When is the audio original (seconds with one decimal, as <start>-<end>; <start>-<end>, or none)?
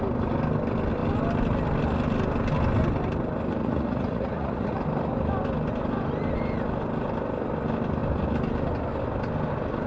0.0-3.6; 4.8-9.9